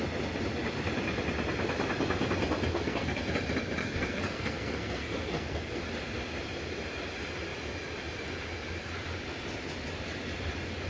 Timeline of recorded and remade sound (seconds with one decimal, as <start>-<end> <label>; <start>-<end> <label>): 0.0-2.7 recorded; 2.7-3.2 remade; 3.2-3.8 recorded; 3.8-5.8 remade; 5.8-10.9 recorded